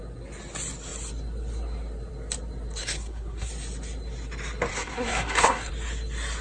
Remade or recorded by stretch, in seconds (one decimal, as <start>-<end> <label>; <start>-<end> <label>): 0.0-2.8 recorded; 2.8-3.5 remade; 3.5-4.7 recorded; 4.7-5.7 remade; 5.7-6.4 recorded